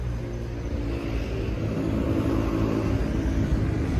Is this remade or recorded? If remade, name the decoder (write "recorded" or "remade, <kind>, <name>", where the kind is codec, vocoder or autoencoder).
recorded